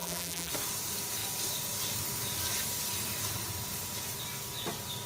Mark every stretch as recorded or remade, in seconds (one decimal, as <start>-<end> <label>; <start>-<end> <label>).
0.0-0.5 remade; 0.5-5.1 recorded